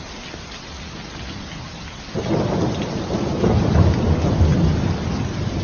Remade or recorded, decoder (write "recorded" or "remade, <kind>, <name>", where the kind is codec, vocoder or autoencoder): recorded